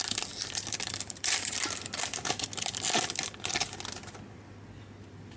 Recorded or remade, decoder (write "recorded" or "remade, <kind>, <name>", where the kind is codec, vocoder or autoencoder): remade, vocoder, BigVGAN v2